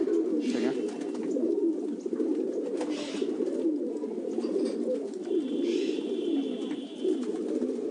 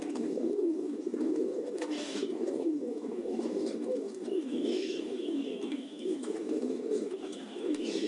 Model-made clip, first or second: second